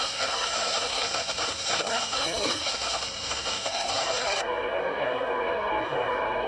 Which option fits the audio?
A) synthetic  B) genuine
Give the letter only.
A